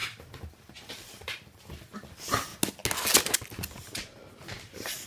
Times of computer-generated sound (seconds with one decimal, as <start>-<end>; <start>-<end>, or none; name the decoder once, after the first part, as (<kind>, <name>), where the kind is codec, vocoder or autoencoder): 0.9-2.5 (vocoder, BigVGAN v2)

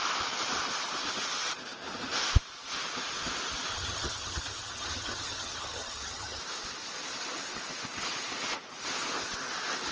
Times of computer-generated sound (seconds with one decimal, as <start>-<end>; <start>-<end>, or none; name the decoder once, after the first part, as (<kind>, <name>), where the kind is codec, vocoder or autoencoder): 3.7-6.4 (vocoder, HiFi-GAN)

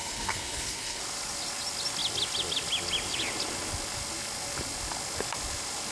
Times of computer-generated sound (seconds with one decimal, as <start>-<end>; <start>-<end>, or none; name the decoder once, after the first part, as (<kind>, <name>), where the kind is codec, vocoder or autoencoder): 0.0-1.0 (codec, HILCodec)

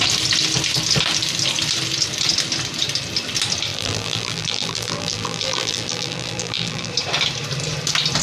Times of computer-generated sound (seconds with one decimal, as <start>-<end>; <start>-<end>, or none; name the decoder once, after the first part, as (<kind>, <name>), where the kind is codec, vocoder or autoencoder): 3.7-6.9 (vocoder, BigVGAN v2)